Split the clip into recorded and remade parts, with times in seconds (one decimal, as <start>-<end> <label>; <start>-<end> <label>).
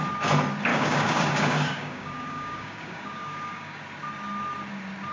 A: 0.0-0.7 recorded; 0.7-3.8 remade; 3.8-5.1 recorded